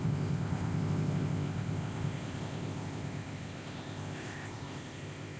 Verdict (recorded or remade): remade